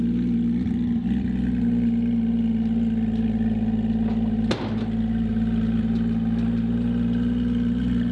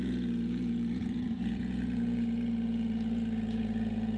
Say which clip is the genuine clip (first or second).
first